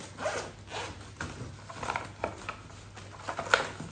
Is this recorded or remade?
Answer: recorded